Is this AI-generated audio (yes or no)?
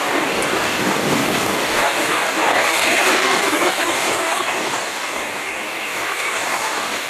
yes